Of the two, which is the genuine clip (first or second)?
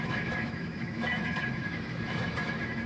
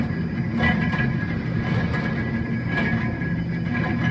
second